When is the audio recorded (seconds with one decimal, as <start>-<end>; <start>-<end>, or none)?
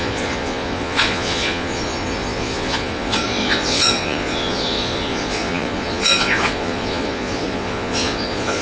none